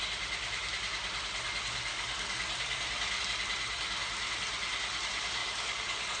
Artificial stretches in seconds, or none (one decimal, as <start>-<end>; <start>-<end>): 1.9-3.2; 5.4-6.2